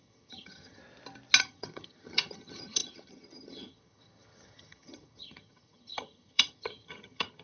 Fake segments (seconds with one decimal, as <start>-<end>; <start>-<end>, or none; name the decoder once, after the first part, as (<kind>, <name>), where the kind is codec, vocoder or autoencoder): 0.0-0.8 (vocoder, HiFi-GAN); 1.4-7.4